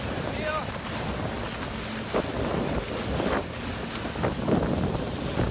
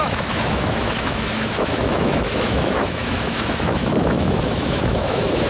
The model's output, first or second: second